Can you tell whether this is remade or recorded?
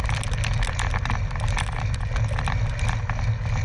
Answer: recorded